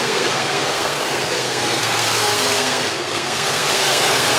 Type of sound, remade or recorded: remade